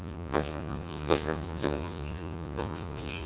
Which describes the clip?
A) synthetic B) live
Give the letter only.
A